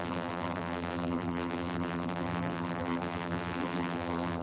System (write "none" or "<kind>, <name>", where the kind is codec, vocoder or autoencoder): vocoder, BigVGAN v2